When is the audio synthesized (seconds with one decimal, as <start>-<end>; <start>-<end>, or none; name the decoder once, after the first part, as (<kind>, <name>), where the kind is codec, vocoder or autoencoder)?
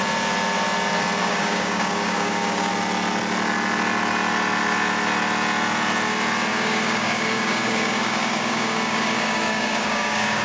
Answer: 1.2-2.7 (codec, DAC); 6.5-10.4